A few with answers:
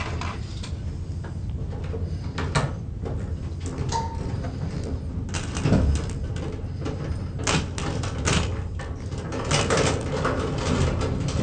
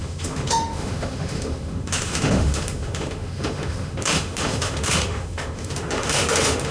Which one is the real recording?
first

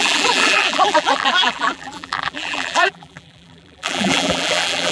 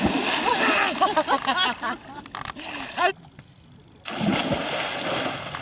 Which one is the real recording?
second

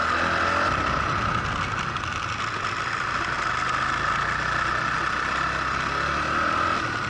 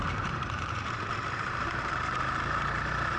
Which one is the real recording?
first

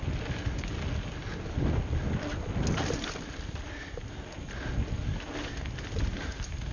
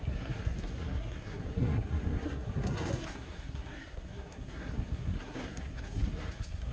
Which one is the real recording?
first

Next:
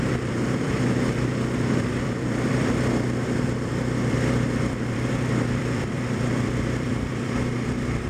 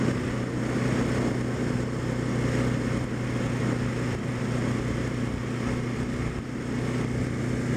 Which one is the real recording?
second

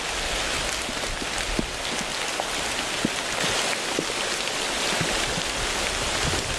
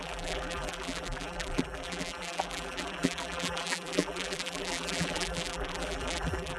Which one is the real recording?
first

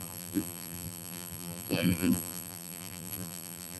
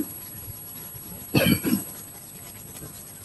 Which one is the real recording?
second